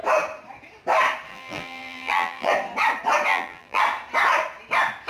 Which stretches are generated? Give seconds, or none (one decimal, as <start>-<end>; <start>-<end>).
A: 1.3-2.5; 3.3-3.8

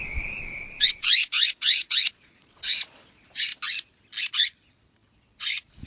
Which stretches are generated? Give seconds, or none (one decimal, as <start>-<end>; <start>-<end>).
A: 0.0-3.5; 4.3-5.9